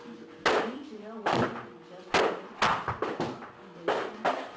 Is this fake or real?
real